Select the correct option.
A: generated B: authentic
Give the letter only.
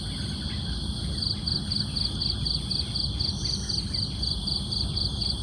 B